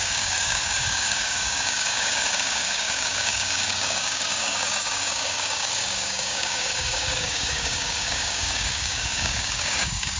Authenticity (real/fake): fake